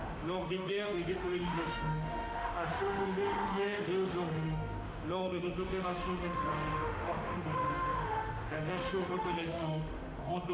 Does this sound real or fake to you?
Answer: fake